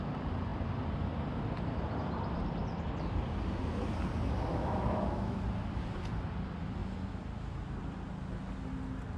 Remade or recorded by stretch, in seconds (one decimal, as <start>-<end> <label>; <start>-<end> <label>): 0.0-4.5 recorded; 4.5-5.4 remade; 5.4-9.2 recorded